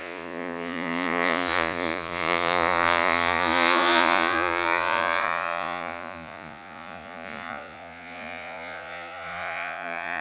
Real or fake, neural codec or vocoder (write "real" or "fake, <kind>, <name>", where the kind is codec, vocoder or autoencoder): fake, vocoder, Vocos